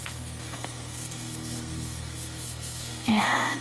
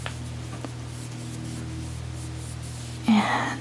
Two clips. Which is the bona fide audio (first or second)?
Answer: second